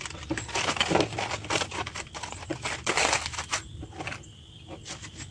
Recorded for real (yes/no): yes